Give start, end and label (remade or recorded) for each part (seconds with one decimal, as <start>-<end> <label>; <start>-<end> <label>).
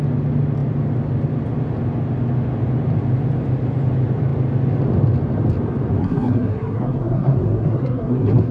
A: 0.0-6.0 recorded; 6.0-8.5 remade